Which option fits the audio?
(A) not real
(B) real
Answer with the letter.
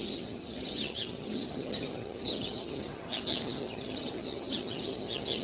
A